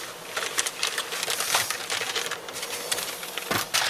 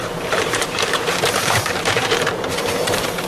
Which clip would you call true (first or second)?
first